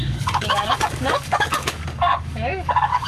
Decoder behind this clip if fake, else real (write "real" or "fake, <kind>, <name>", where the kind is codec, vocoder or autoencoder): fake, codec, DAC